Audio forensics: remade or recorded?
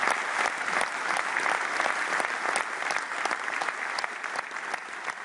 recorded